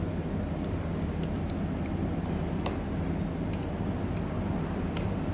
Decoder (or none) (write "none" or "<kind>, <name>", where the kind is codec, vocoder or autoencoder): none